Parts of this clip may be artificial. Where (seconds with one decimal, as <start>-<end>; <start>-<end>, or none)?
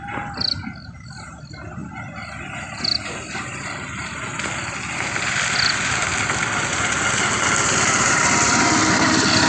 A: none